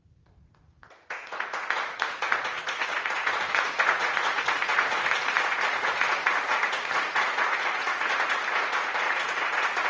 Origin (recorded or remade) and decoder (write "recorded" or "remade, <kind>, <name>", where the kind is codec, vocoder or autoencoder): remade, vocoder, Vocos